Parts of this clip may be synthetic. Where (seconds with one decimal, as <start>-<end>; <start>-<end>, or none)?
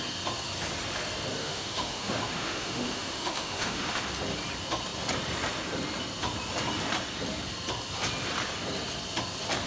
1.4-4.0